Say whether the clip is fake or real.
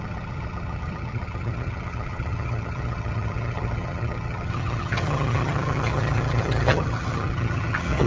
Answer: fake